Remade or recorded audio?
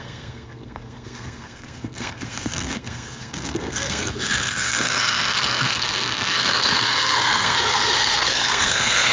remade